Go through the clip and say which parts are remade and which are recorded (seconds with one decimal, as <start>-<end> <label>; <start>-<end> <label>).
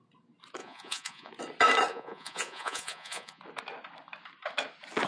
0.0-0.6 recorded; 0.6-1.3 remade; 1.3-1.9 recorded; 1.9-3.4 remade; 3.4-5.1 recorded